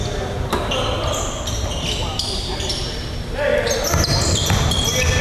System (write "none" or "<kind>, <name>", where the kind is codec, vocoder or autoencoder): none